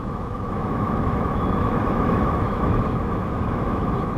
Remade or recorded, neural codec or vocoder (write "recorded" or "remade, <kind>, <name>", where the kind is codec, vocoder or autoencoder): remade, autoencoder, DAC-VAE